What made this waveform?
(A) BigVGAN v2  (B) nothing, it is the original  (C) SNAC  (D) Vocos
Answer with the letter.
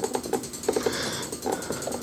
B